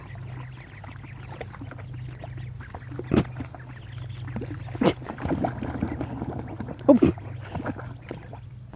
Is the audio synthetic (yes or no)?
no